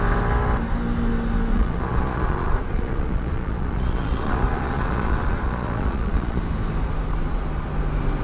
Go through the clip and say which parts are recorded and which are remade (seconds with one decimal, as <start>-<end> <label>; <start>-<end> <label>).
0.0-1.5 recorded; 1.5-6.4 remade; 6.4-8.2 recorded